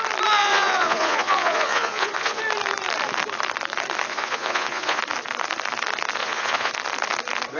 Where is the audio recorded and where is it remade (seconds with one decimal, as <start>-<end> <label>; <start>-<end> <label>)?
0.0-0.4 recorded; 0.4-2.4 remade; 2.4-4.1 recorded; 4.1-5.0 remade; 5.0-6.2 recorded; 6.2-6.7 remade; 6.7-7.6 recorded